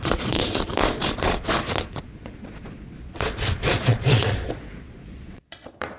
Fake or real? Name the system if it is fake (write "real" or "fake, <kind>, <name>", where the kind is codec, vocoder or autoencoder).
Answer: fake, vocoder, Vocos